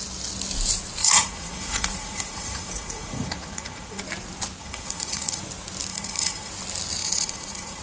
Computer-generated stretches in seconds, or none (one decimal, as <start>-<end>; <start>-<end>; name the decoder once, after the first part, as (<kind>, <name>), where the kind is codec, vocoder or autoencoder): 1.0-4.0 (vocoder, Vocos); 4.6-5.4; 5.9-6.5; 7.0-7.8